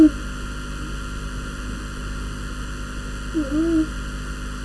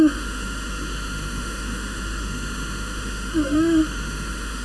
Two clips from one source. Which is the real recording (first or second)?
first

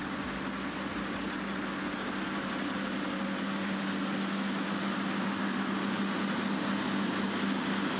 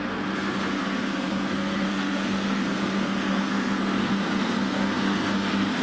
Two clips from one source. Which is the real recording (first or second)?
first